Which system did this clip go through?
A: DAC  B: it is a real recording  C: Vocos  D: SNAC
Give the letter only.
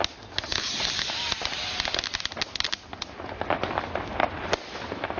B